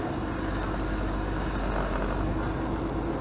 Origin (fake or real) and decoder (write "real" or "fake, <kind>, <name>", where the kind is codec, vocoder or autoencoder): real